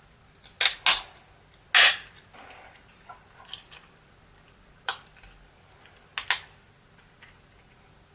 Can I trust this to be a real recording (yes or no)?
yes